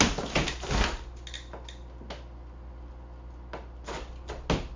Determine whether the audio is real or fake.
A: real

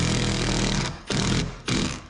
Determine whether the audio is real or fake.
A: fake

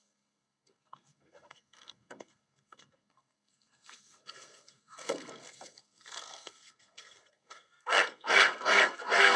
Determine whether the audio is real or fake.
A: fake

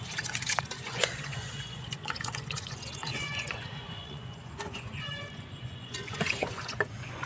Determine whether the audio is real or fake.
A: fake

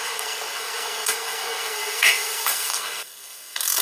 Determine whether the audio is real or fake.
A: fake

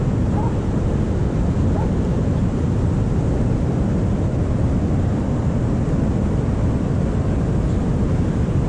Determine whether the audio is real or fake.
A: real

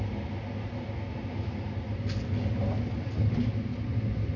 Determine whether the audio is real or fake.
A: real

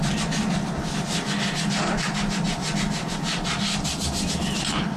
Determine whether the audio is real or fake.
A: real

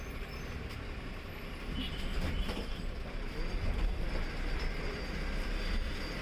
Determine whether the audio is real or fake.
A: real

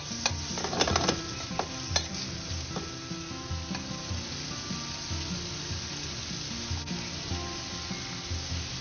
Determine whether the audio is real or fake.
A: real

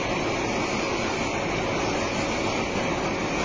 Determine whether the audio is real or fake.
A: real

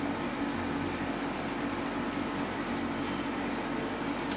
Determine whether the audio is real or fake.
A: real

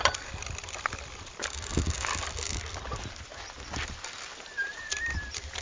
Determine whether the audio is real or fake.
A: fake